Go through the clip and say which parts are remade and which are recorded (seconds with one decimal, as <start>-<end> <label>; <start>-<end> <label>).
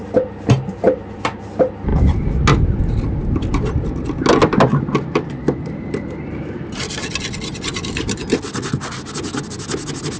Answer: 0.0-10.2 recorded